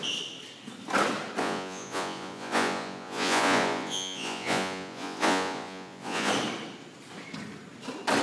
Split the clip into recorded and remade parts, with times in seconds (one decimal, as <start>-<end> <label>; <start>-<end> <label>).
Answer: 0.0-1.4 recorded; 1.4-6.3 remade; 6.3-8.2 recorded